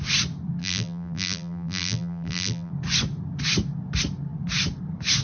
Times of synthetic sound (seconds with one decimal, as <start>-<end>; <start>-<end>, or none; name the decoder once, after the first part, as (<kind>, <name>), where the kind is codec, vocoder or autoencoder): 0.6-2.7 (vocoder, BigVGAN v2)